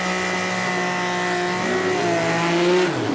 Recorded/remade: recorded